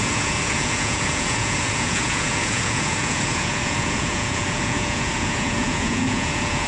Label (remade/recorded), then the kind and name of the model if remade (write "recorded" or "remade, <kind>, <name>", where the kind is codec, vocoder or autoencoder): remade, vocoder, Vocos